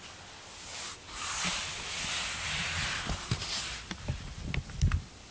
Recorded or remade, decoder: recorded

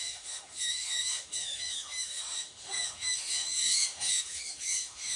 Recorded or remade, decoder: remade, autoencoder, DAC-VAE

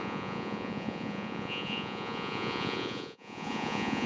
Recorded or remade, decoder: remade, vocoder, Vocos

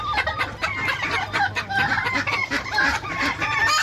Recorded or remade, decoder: remade, vocoder, BigVGAN v2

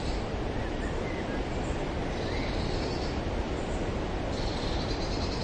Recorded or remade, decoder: recorded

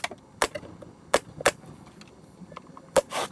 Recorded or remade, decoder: recorded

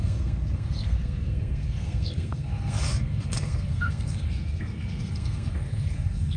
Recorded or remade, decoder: remade, codec, SNAC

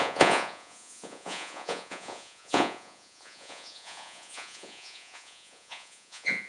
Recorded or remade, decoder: remade, vocoder, Vocos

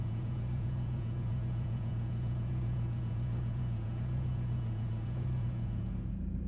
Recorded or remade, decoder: remade, vocoder, Vocos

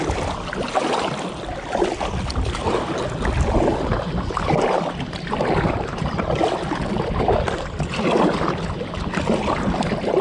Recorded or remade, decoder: recorded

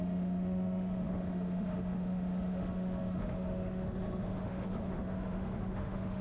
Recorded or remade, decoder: remade, autoencoder, DAC-VAE